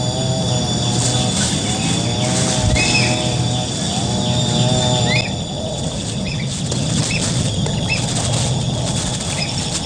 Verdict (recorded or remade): recorded